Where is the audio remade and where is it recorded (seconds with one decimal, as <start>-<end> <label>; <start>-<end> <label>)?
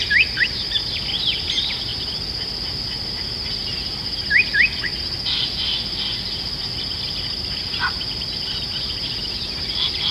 0.0-10.1 recorded